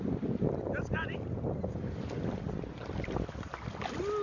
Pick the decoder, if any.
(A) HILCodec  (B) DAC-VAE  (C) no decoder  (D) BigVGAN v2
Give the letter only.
C